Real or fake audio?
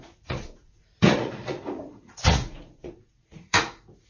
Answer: fake